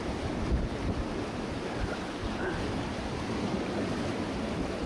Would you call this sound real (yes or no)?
yes